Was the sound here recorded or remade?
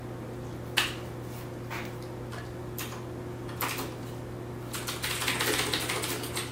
recorded